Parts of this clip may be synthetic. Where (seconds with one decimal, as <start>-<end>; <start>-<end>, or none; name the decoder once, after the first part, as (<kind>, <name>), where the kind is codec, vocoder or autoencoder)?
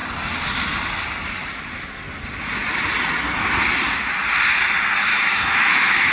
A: 5.1-6.1 (autoencoder, DAC-VAE)